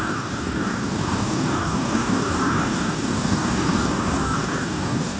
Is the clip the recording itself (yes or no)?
no